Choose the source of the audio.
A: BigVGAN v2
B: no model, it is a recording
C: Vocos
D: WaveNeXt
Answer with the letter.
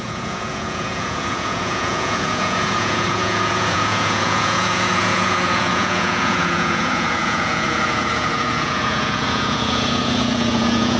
C